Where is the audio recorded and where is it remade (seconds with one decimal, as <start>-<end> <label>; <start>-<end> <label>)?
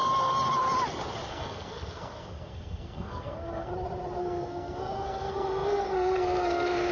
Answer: 0.0-1.3 recorded; 1.3-3.7 remade; 3.7-4.2 recorded; 4.2-6.9 remade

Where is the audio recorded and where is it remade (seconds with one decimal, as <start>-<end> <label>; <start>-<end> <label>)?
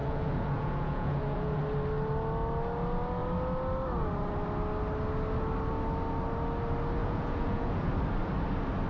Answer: 0.0-1.6 remade; 1.6-7.0 recorded; 7.0-7.9 remade; 7.9-8.9 recorded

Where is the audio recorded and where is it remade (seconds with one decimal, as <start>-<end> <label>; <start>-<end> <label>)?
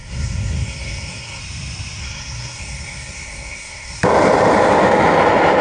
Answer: 0.0-1.4 remade; 1.4-2.0 recorded; 2.0-4.0 remade; 4.0-5.6 recorded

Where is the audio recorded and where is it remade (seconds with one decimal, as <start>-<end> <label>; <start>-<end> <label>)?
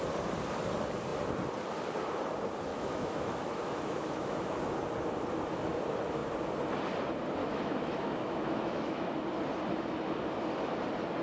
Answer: 0.0-2.7 recorded; 2.7-4.6 remade; 4.6-7.4 recorded; 7.4-9.1 remade; 9.1-11.2 recorded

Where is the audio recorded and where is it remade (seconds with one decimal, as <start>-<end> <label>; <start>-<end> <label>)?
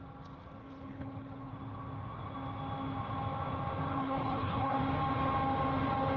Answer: 0.0-0.6 recorded; 0.6-1.5 remade; 1.5-3.9 recorded; 3.9-4.8 remade; 4.8-6.2 recorded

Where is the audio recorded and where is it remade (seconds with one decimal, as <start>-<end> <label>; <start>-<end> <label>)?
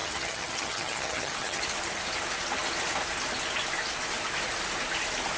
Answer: 0.0-1.6 remade; 1.6-5.4 recorded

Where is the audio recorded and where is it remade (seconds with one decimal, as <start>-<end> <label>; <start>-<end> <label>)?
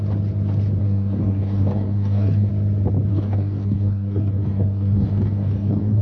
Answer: 0.0-0.8 recorded; 0.8-2.5 remade; 2.5-3.1 recorded; 3.1-6.0 remade